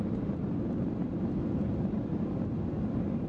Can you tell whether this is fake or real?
fake